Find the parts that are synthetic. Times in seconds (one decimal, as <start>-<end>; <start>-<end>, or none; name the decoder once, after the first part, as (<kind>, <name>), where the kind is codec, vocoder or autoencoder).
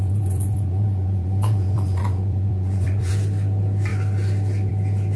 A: 0.0-3.1 (vocoder, Vocos)